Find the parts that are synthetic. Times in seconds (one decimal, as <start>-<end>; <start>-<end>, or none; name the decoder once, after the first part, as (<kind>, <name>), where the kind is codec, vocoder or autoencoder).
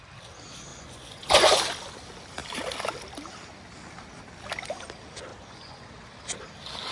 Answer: 0.7-1.6 (vocoder, Vocos); 5.3-5.9